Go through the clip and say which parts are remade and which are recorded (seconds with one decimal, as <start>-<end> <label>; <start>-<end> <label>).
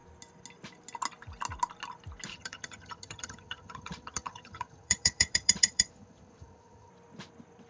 0.0-2.3 recorded; 2.3-6.9 remade; 6.9-7.7 recorded